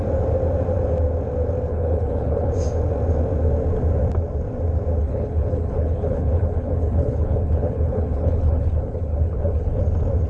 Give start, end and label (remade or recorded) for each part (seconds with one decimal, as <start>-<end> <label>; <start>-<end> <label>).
0.0-1.7 recorded; 1.7-2.5 remade; 2.5-5.0 recorded; 5.0-9.8 remade; 9.8-10.3 recorded